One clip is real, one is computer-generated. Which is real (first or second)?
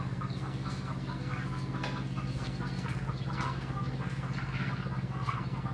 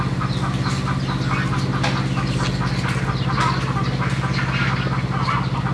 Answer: second